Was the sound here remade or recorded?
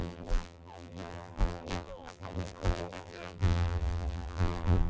remade